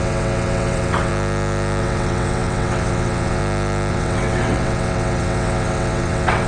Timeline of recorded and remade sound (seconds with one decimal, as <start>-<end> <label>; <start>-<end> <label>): 0.0-1.1 remade; 1.1-1.8 recorded; 1.8-3.4 remade; 3.4-3.9 recorded; 3.9-6.5 remade

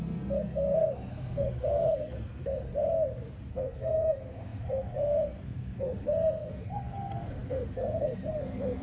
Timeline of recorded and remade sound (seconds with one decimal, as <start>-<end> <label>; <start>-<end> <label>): 0.0-2.7 remade; 2.7-3.5 recorded; 3.5-8.8 remade

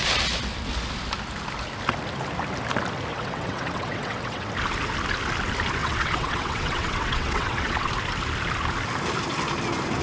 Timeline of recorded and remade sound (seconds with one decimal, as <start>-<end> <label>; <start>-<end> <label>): 0.0-3.1 recorded; 3.1-4.5 remade; 4.5-5.8 recorded; 5.8-7.9 remade; 7.9-10.0 recorded